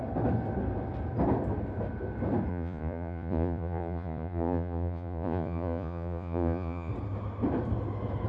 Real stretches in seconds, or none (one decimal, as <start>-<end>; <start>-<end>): 0.0-2.5; 6.9-8.3